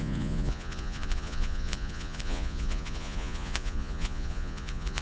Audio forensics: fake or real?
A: fake